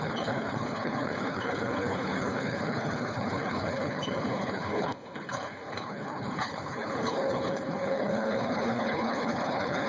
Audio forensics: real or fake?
fake